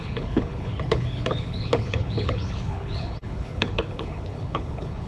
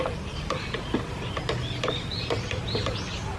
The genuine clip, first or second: second